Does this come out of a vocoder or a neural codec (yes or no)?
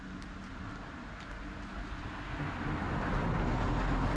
no